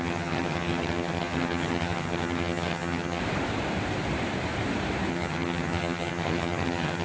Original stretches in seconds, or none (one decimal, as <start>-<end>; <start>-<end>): 3.2-5.1